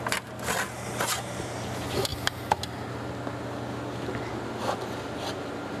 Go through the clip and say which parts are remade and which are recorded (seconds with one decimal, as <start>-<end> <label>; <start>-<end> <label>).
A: 0.0-5.8 recorded